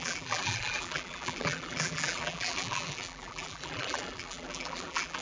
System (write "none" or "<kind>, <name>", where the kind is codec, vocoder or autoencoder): vocoder, BigVGAN v2